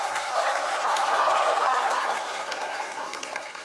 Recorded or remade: remade